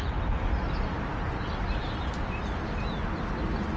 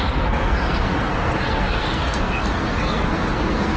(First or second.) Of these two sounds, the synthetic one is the second